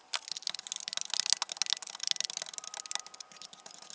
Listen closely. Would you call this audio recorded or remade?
recorded